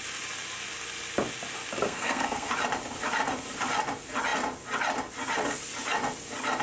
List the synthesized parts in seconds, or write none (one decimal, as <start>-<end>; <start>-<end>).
1.8-2.5